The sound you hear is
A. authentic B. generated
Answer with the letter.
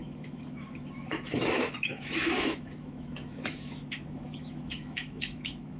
B